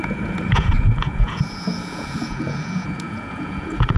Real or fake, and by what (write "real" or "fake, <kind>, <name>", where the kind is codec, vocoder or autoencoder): fake, vocoder, Vocos